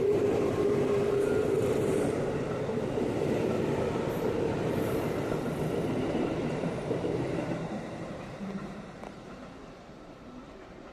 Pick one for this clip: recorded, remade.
remade